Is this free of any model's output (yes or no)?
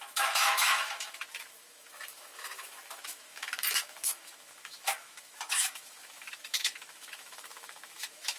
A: no